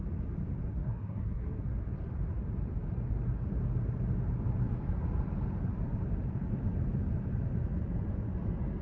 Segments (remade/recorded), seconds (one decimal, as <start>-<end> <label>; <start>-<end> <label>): 0.0-0.7 recorded; 0.7-1.6 remade; 1.6-8.8 recorded